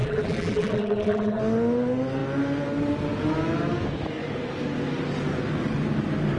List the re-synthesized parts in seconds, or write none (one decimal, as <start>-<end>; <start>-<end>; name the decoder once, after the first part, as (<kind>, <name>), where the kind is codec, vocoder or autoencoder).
0.0-1.4 (vocoder, BigVGAN v2)